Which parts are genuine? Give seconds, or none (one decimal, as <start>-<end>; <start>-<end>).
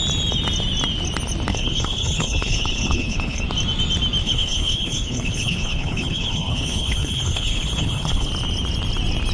0.0-1.5; 3.4-4.2; 8.3-9.3